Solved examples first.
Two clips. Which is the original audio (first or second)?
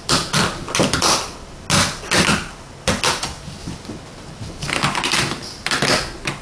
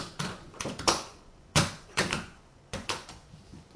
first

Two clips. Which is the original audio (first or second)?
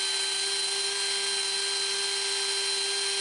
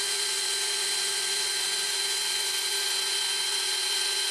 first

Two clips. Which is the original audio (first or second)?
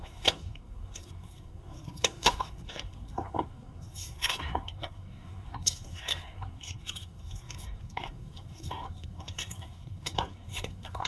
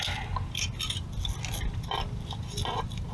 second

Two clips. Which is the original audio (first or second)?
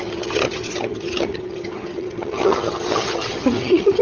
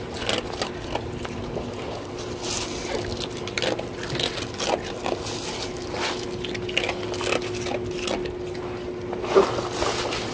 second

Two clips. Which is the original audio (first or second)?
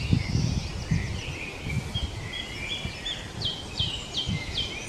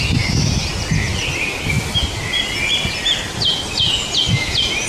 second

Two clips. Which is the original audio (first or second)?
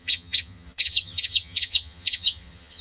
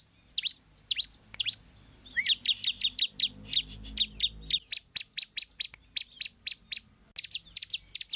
second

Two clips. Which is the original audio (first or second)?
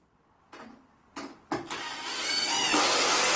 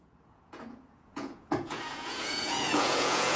first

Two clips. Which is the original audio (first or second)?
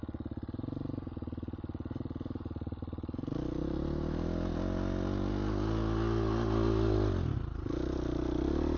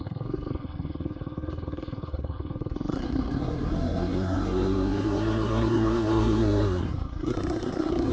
first